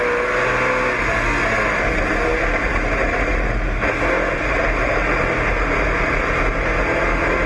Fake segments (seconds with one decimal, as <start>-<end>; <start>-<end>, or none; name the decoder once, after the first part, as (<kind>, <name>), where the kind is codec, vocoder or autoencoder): none

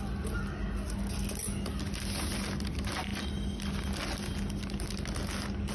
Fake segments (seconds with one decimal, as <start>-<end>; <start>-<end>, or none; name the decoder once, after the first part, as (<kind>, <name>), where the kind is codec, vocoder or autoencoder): none

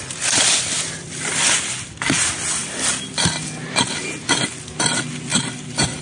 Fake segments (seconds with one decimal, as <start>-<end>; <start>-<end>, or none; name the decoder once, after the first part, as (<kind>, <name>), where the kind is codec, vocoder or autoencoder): none

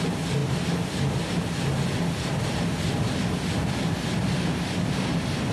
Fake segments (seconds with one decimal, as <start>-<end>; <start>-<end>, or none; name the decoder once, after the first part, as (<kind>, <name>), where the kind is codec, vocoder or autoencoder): none

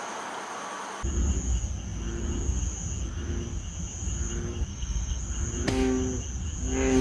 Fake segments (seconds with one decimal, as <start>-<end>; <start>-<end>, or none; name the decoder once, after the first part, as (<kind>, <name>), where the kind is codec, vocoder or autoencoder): 4.7-5.2 (codec, SNAC)

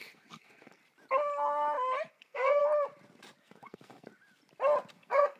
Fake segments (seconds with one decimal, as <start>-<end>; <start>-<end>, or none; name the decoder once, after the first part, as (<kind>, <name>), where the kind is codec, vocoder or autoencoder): 0.0-0.8 (codec, SNAC); 2.1-2.6; 3.4-4.1; 4.9-5.4

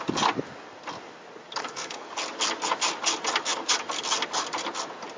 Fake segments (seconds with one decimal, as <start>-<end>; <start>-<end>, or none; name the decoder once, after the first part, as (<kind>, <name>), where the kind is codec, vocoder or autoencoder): 1.6-2.1 (codec, SNAC)

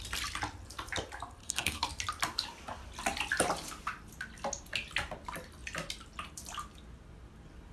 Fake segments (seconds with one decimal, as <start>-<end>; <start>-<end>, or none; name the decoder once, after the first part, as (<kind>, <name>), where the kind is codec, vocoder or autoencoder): 1.4-1.9 (codec, SNAC)